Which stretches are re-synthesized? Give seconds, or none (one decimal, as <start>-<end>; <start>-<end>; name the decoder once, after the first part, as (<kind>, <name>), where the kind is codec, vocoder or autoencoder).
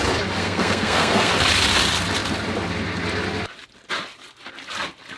0.4-1.3 (codec, SNAC)